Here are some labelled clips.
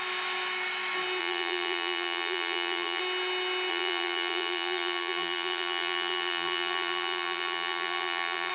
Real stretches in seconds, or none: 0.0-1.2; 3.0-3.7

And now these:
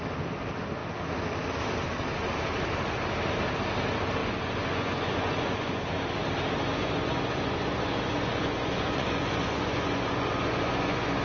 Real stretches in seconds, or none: 0.0-4.2; 5.8-6.7

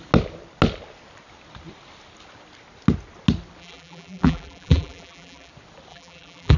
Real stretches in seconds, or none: 0.0-3.6; 5.5-5.9

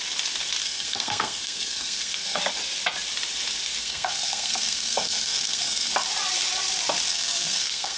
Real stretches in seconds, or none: 0.0-0.6; 2.4-3.8; 5.9-7.1

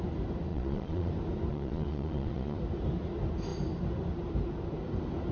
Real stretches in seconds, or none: 0.0-0.5; 1.1-1.5; 2.6-5.3